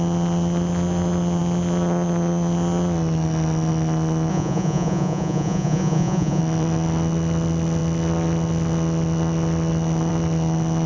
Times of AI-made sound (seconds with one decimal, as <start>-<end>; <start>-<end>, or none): 4.3-6.4